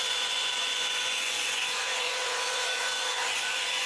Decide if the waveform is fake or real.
fake